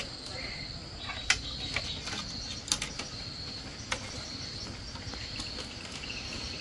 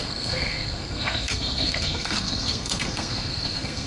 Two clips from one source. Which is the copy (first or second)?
second